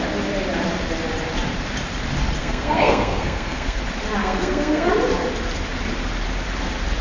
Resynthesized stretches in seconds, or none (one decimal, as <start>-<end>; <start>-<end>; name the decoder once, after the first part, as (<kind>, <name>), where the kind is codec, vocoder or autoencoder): 2.4-3.8 (codec, SNAC); 4.2-4.9